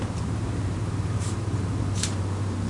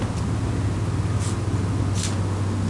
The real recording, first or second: second